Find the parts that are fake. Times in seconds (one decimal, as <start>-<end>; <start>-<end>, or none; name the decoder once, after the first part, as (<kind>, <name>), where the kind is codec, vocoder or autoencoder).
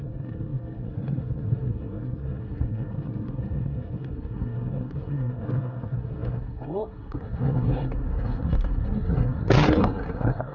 0.0-10.5 (codec, SNAC)